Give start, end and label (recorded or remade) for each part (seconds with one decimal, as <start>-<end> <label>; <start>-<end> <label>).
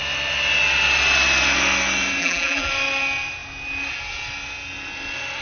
0.0-2.2 recorded; 2.2-2.7 remade; 2.7-5.4 recorded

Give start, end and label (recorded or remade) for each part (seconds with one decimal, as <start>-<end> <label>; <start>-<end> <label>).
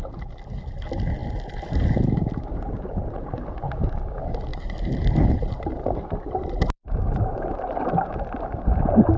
0.0-4.5 recorded; 4.5-8.4 remade; 8.4-9.2 recorded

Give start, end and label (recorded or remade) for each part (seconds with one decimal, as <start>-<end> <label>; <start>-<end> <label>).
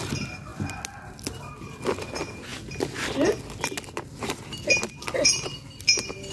0.0-6.3 recorded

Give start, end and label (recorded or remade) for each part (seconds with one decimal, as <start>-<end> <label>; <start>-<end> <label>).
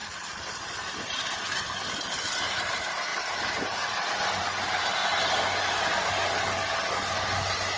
0.0-1.9 remade; 1.9-7.8 recorded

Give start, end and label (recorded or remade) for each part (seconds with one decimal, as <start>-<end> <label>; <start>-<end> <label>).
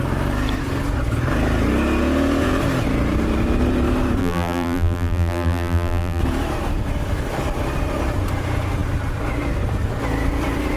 0.0-4.2 recorded; 4.2-6.2 remade; 6.2-10.8 recorded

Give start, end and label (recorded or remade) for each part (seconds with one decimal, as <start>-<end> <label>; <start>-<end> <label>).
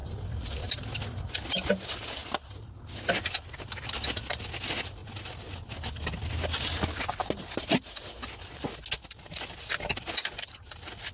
0.0-1.3 remade; 1.3-2.2 recorded; 2.2-2.7 remade; 2.7-5.0 recorded; 5.0-6.1 remade; 6.1-11.1 recorded